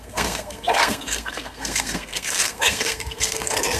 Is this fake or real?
fake